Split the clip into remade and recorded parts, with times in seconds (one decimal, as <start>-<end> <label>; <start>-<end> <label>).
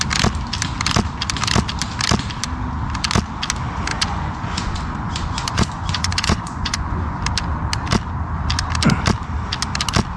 0.0-3.9 recorded; 3.9-7.2 remade; 7.2-10.2 recorded